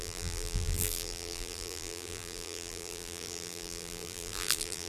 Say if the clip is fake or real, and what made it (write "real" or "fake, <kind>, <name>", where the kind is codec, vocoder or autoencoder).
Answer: fake, vocoder, BigVGAN v2